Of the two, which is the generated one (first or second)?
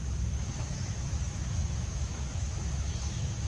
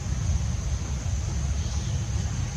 first